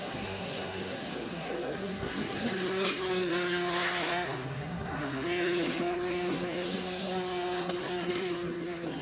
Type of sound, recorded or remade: remade